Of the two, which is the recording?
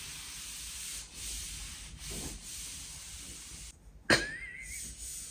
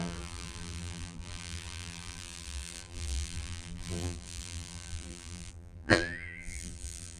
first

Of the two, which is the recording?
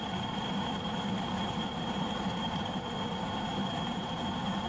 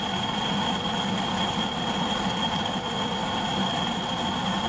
second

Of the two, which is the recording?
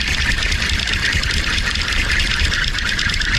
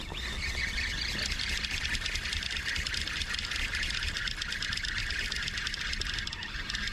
second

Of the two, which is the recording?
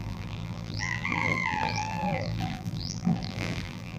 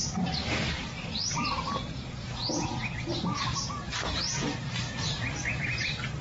second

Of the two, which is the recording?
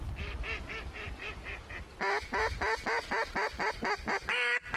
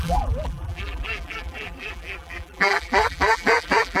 first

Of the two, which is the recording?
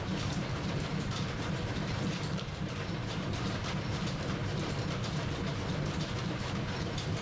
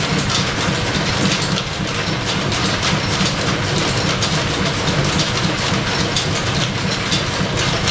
second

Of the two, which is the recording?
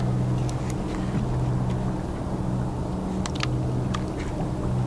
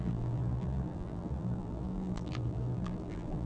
first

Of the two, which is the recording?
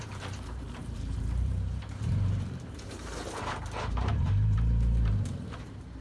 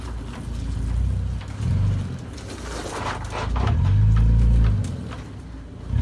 second